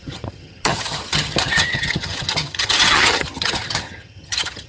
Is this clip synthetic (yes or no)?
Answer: yes